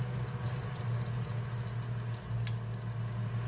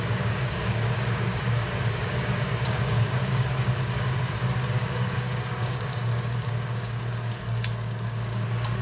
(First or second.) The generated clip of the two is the second